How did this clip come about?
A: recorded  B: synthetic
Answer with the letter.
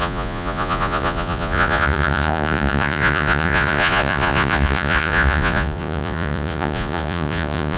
B